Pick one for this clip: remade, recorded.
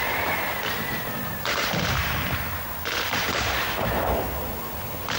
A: remade